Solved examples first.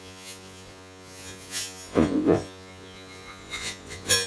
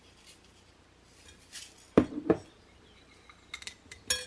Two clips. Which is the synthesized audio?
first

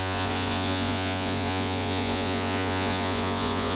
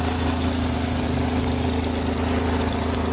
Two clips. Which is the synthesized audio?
first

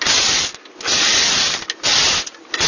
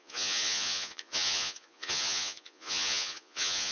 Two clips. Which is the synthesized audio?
second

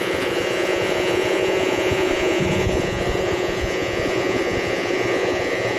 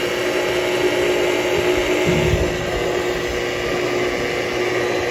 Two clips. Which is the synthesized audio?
first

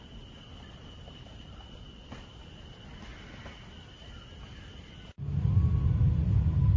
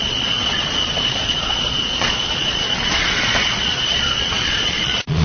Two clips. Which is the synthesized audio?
second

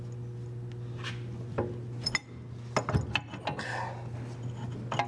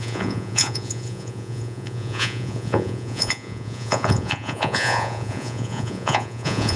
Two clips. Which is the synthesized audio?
second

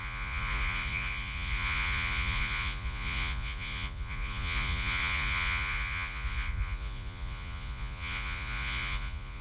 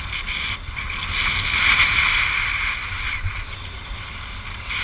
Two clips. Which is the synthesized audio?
first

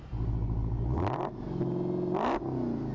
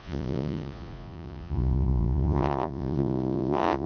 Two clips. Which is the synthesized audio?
second